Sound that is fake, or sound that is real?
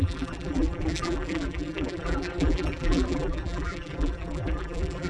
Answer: fake